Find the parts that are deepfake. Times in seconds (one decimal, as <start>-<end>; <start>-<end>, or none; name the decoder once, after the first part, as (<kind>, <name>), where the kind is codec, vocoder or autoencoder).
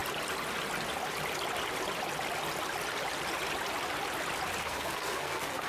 4.6-5.7 (codec, SNAC)